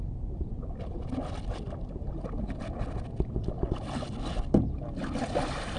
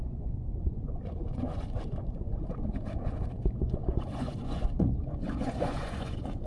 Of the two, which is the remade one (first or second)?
second